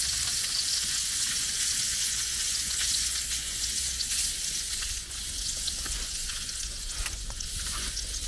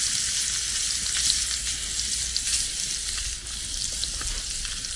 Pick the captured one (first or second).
second